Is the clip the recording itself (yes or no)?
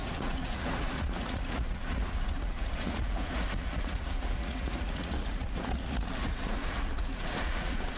no